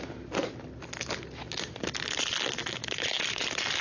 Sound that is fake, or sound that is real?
real